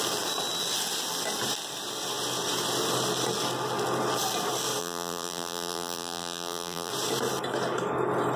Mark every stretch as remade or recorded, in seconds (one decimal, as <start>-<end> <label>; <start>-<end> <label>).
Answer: 0.0-4.8 recorded; 4.8-6.9 remade; 6.9-8.4 recorded